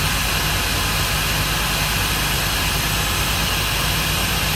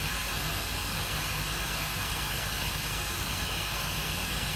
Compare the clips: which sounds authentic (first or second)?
first